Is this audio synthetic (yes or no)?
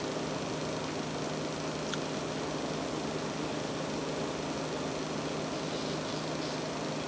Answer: no